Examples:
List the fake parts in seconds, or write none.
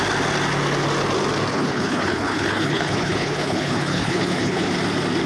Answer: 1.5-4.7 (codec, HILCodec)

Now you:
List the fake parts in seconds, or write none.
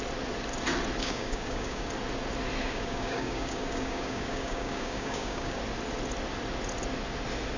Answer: 1.0-1.9 (codec, DAC); 2.6-5.6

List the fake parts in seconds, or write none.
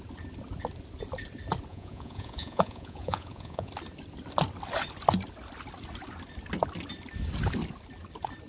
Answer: 1.7-3.7 (vocoder, Vocos)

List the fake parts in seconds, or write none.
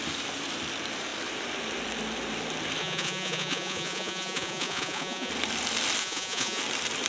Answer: 2.8-5.3 (vocoder, Vocos); 6.0-6.6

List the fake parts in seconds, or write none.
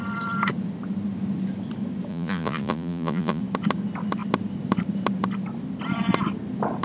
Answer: 2.1-3.4 (vocoder, Vocos)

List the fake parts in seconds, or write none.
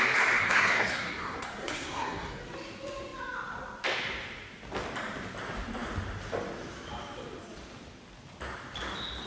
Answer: 0.4-2.4 (codec, SNAC)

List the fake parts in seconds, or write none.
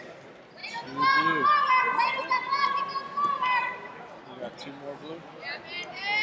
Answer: none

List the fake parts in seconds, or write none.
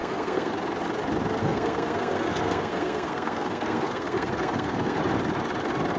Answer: 0.0-0.5 (codec, SNAC); 1.4-5.0